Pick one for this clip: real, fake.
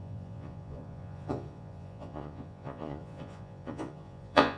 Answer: fake